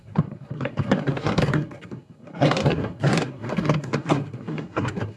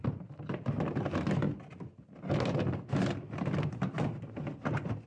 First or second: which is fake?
first